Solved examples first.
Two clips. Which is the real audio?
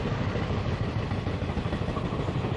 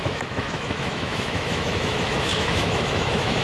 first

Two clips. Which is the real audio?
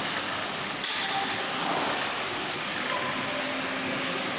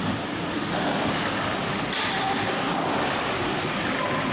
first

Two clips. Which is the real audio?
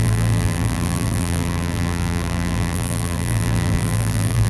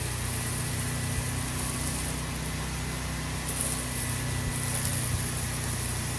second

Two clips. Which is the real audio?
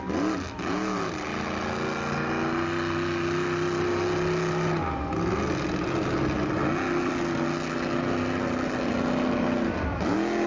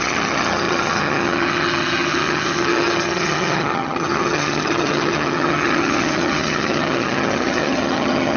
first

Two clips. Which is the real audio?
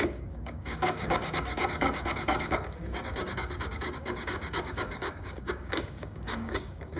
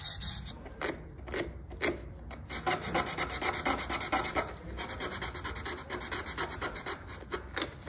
second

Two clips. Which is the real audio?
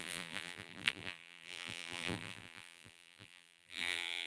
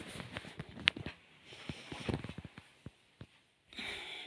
second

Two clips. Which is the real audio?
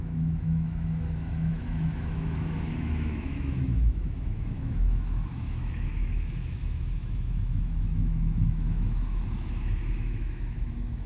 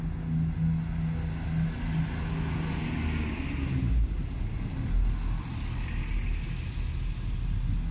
second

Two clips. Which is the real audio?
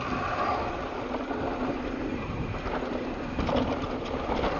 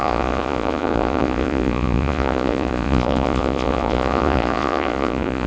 first